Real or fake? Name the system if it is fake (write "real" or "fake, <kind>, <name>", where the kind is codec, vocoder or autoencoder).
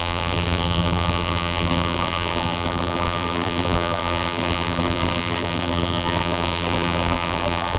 fake, vocoder, BigVGAN v2